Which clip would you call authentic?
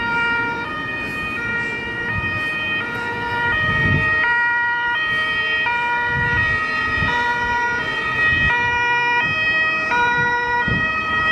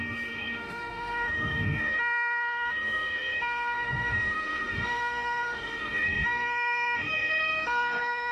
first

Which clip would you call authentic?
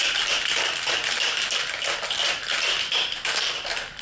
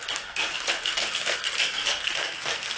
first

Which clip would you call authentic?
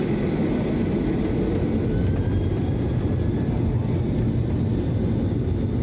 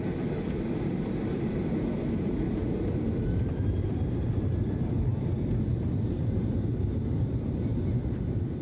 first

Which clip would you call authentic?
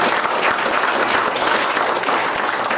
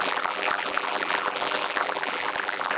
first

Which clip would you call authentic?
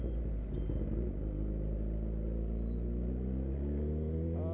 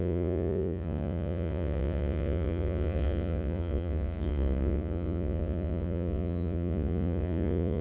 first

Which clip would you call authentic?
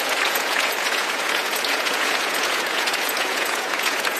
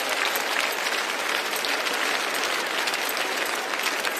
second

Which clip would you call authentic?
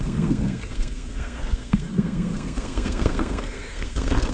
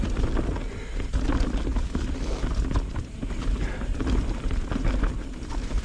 second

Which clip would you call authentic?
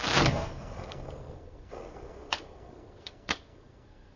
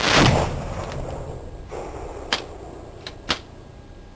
second